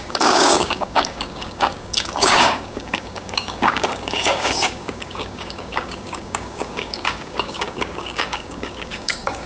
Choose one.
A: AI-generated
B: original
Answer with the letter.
A